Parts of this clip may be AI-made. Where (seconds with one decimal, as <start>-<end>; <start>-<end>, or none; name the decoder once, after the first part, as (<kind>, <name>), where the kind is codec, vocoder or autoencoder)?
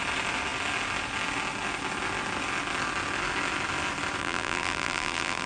4.2-5.5 (vocoder, BigVGAN v2)